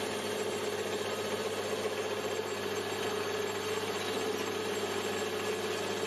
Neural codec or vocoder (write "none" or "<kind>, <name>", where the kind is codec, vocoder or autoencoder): none